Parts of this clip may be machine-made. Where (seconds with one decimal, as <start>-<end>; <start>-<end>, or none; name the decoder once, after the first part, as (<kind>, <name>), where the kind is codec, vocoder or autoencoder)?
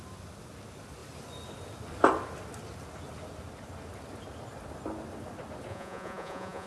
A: 5.7-6.7 (vocoder, Vocos)